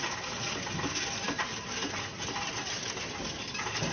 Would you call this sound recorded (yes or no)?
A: yes